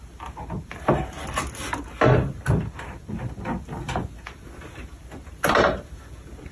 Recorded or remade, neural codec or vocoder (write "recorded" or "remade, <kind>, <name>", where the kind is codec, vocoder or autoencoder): recorded